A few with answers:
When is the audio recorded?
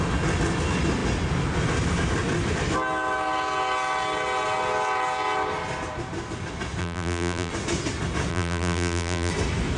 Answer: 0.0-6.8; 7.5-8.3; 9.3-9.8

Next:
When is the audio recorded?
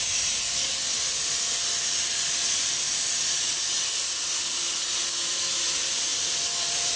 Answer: 0.0-6.1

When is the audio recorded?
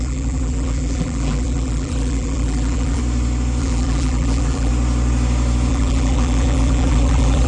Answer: 3.0-3.6; 4.7-5.7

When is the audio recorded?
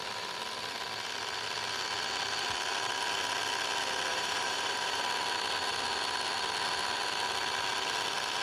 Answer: 0.0-4.1; 5.0-8.4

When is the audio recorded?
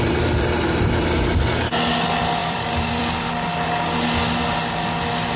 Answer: 0.0-2.4; 3.0-5.4